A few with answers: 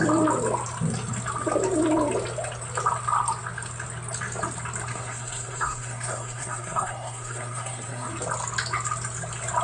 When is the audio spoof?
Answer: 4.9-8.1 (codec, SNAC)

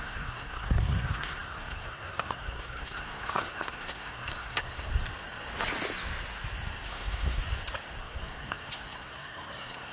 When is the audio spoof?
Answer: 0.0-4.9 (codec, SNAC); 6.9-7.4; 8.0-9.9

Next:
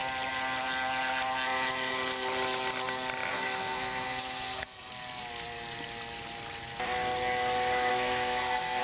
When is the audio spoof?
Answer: 3.3-4.9 (codec, SNAC); 7.9-8.8

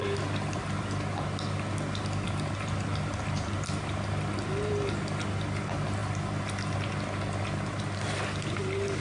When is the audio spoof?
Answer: none

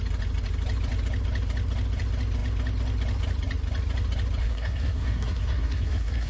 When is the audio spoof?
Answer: 4.4-6.3 (codec, SNAC)